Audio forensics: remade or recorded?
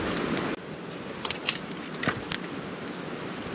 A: recorded